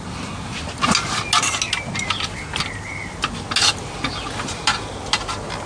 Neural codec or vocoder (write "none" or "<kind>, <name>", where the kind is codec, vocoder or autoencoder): none